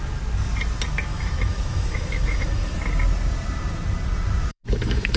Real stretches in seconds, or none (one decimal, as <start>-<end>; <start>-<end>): 0.0-1.1; 2.7-4.5